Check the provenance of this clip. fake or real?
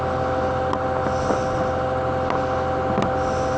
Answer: real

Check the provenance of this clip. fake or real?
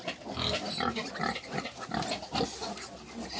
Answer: real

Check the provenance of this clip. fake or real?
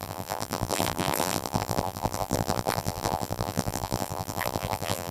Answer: fake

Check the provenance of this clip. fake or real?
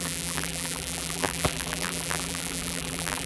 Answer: fake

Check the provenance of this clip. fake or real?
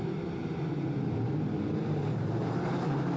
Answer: fake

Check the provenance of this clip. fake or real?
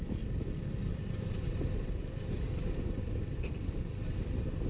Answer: fake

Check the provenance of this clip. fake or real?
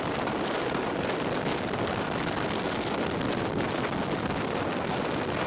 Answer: real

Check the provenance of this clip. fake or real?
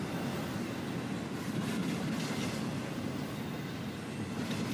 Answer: real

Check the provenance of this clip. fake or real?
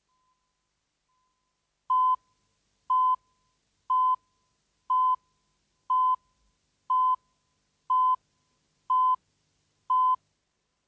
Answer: real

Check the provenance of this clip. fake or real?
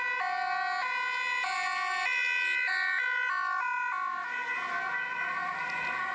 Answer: real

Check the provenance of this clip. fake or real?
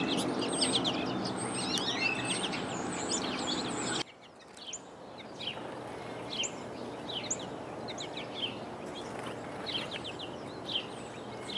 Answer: real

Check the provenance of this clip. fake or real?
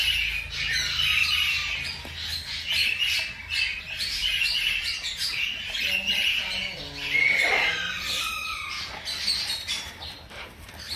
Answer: real